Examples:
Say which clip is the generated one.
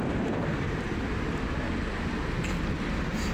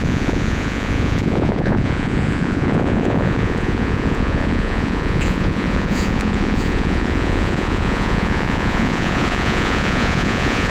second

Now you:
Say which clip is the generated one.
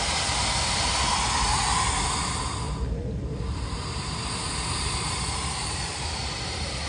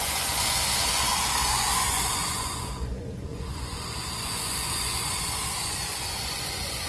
second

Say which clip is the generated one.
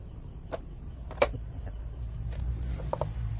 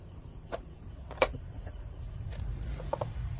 second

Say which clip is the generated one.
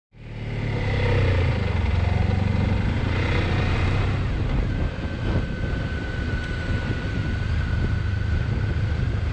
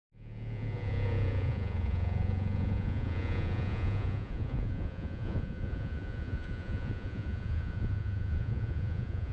second